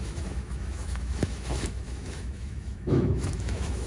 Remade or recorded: remade